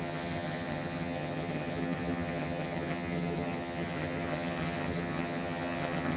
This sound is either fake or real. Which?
fake